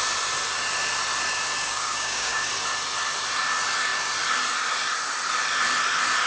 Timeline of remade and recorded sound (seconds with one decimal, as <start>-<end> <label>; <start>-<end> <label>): 0.0-1.6 recorded; 1.6-2.5 remade; 2.5-6.3 recorded